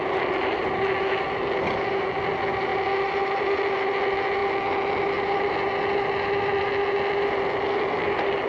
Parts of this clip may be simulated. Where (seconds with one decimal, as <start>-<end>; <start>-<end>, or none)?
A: none